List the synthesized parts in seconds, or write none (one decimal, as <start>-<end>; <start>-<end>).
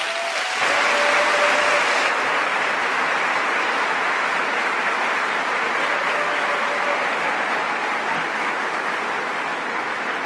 2.5-4.9